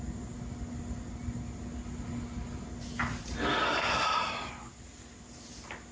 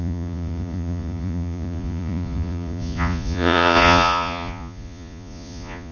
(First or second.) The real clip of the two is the first